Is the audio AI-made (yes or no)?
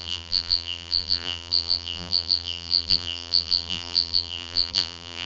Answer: yes